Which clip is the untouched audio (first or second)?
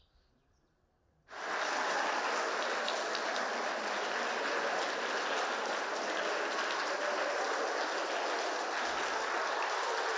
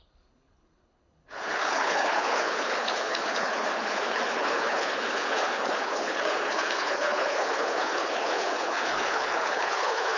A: first